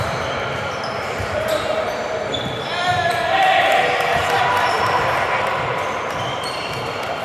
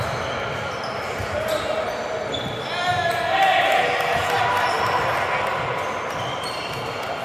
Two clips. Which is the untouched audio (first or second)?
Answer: second